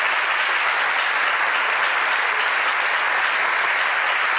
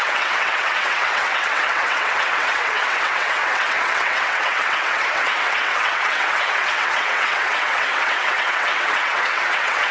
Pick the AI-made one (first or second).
second